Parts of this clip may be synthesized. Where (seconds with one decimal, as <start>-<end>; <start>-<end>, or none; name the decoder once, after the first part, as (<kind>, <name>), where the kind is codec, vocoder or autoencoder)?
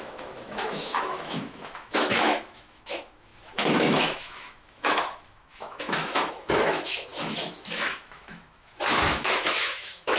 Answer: 0.0-10.2 (autoencoder, DAC-VAE)